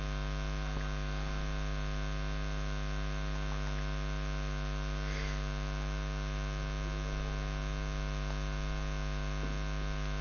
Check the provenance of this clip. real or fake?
real